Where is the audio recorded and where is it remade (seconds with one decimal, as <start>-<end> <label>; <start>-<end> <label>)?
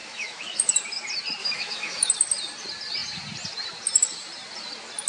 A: 0.0-0.7 remade; 0.7-1.4 recorded; 1.4-2.1 remade; 2.1-5.1 recorded